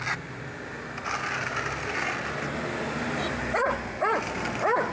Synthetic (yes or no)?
no